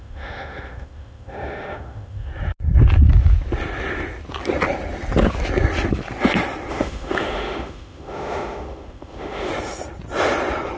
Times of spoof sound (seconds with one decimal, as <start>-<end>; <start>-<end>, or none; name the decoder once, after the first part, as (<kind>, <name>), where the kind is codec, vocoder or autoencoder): 0.0-2.3 (autoencoder, DAC-VAE); 6.7-9.5